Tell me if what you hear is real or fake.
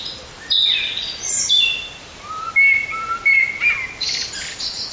real